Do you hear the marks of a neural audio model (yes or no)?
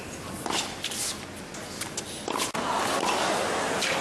no